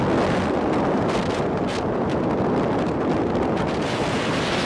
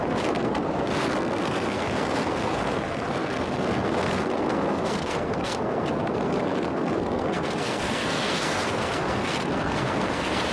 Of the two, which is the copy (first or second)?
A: second